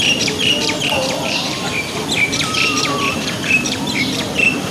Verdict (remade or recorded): remade